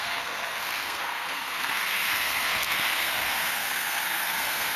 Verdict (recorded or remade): remade